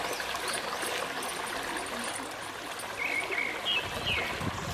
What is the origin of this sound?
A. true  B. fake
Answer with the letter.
A